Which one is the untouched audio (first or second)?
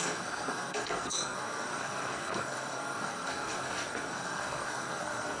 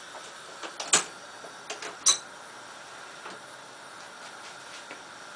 second